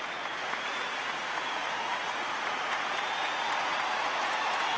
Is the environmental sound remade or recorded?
remade